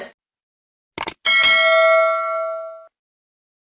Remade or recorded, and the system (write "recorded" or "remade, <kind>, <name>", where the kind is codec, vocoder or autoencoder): recorded